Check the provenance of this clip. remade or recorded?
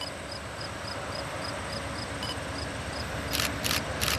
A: remade